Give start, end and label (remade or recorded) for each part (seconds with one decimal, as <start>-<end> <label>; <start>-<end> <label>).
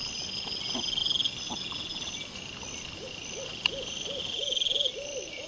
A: 0.0-5.5 recorded